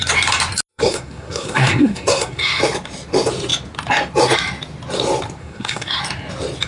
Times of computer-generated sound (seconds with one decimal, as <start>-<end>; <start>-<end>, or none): 0.7-2.6; 5.4-6.0